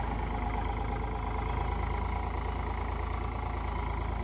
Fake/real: real